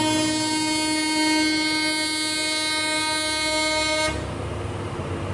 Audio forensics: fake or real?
real